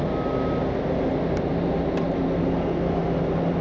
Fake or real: real